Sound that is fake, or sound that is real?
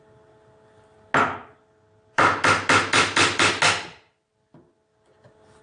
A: real